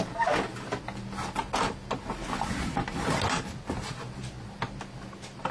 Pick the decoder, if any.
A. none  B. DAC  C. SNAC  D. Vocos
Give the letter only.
A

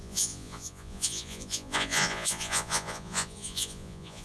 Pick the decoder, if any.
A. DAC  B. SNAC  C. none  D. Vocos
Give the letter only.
D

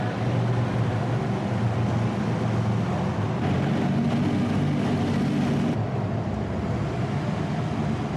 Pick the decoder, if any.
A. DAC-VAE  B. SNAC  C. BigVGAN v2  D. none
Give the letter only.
D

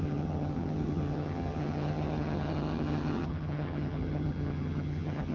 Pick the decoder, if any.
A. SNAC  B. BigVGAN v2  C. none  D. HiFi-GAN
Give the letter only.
D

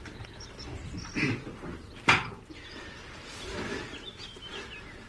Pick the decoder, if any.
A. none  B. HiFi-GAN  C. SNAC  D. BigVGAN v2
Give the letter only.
A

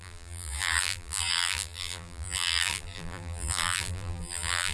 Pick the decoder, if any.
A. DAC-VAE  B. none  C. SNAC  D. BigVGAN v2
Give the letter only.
D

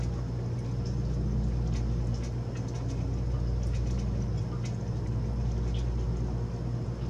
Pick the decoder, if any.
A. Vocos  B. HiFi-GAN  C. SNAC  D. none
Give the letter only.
D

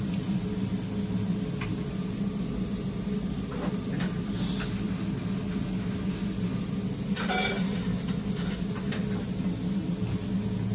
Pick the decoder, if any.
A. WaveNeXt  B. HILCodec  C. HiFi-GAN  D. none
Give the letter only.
D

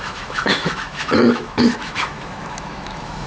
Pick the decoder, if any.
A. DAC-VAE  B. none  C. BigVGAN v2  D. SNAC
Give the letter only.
A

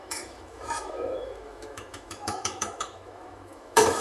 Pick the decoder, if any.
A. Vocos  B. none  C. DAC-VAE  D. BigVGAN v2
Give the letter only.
C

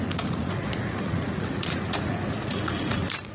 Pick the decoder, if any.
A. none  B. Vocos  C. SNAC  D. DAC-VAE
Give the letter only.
B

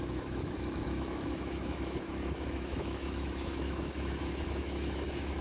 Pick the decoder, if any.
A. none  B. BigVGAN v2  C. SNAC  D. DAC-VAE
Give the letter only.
D